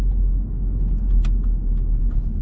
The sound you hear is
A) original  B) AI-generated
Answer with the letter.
A